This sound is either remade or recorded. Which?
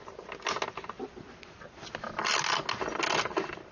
recorded